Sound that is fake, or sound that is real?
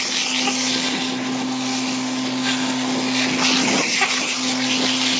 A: real